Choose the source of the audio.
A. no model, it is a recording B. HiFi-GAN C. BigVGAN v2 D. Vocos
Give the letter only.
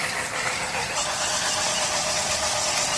A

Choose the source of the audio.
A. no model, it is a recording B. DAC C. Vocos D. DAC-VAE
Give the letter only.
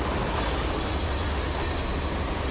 A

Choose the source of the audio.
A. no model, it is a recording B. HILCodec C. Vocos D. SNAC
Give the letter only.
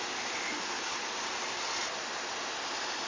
A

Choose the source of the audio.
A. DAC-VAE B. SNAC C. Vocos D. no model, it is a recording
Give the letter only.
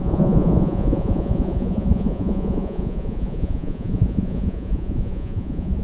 C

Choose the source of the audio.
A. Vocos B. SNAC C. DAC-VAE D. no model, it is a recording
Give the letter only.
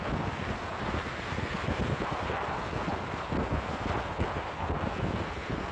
D